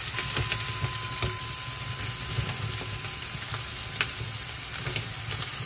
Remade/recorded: recorded